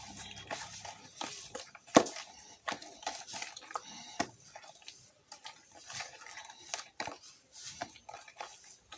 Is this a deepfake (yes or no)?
yes